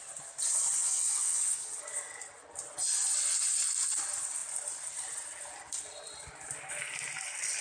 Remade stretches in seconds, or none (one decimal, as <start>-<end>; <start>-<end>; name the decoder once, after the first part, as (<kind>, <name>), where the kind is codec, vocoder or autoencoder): 0.8-1.8 (vocoder, WaveNeXt)